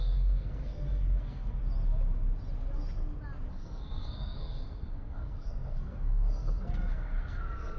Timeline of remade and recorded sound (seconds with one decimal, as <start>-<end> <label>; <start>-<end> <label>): 0.0-1.6 remade; 1.6-3.5 recorded; 3.5-7.8 remade